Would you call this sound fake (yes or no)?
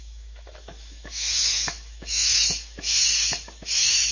yes